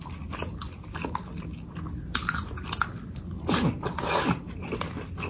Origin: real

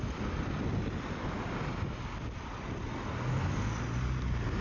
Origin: real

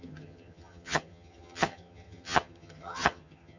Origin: fake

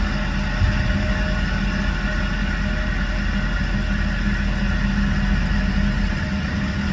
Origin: real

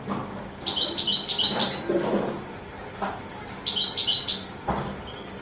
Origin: real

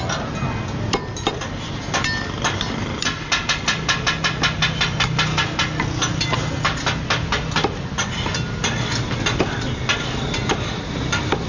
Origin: real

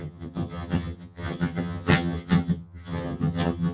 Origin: fake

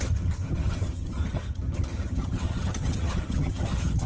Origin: fake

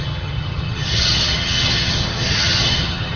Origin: fake